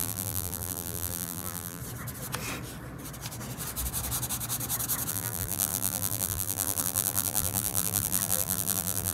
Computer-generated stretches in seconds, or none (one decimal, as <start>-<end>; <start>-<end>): 0.0-1.8; 5.1-9.1